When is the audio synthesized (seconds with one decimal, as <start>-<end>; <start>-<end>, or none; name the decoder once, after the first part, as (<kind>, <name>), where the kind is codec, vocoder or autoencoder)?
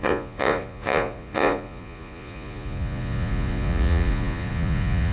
0.0-5.1 (vocoder, Vocos)